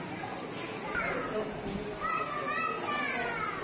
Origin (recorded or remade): recorded